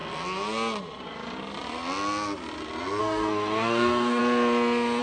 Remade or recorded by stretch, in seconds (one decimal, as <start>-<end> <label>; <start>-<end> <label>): 0.0-3.0 recorded; 3.0-4.2 remade; 4.2-5.0 recorded